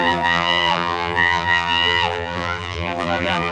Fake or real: fake